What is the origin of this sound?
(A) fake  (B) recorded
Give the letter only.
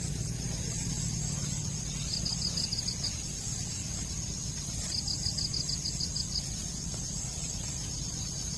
B